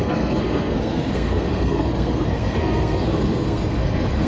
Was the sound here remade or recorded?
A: remade